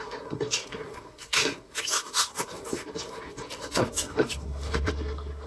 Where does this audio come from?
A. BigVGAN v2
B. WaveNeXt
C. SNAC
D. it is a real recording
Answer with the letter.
C